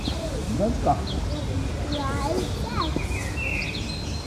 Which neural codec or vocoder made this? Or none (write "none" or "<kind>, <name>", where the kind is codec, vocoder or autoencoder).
none